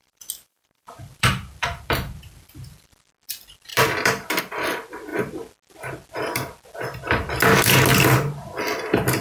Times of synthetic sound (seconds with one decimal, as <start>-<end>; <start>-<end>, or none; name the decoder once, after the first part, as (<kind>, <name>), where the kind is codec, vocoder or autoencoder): 0.0-2.9 (vocoder, BigVGAN v2); 3.7-4.4